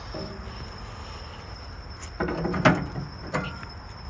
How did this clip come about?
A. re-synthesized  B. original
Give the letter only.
B